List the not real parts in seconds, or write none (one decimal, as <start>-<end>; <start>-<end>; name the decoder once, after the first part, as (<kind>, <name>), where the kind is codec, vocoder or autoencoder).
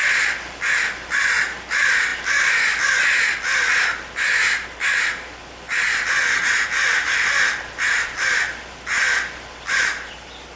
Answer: none